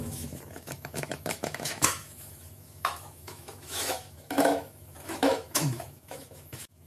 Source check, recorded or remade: remade